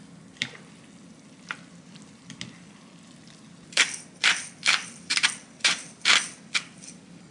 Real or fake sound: real